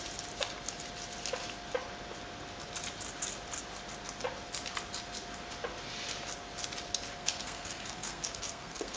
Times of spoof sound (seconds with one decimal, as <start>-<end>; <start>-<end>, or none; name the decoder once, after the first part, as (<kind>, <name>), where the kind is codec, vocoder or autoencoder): 7.2-9.0 (codec, SNAC)